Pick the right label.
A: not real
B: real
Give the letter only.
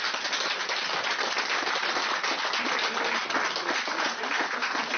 B